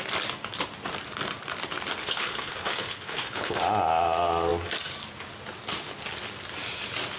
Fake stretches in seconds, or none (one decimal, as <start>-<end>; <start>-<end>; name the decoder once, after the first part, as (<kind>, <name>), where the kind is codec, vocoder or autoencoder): 2.0-3.6 (codec, HILCodec)